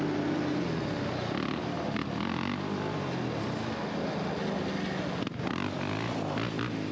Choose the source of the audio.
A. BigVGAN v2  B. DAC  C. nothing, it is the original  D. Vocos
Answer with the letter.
C